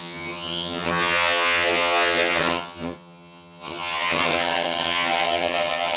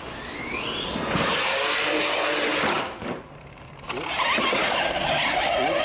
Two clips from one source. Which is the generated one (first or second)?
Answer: first